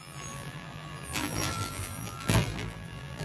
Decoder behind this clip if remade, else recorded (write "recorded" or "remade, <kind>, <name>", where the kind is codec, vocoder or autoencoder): remade, vocoder, BigVGAN v2